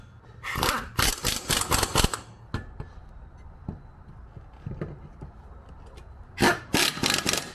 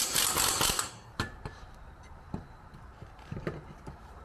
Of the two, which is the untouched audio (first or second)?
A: first